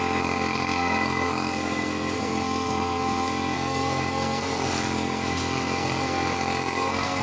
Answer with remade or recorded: remade